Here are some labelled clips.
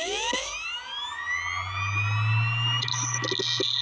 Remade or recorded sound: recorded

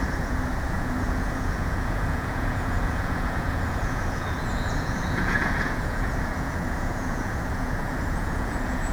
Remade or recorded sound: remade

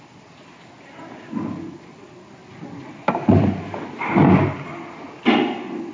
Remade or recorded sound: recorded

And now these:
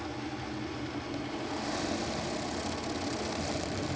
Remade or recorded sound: recorded